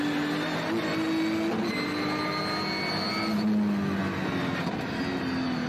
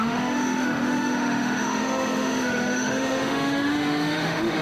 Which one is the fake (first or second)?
second